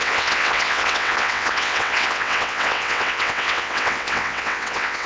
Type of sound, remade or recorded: remade